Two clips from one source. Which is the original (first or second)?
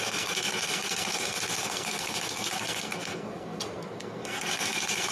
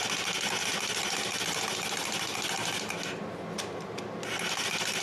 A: second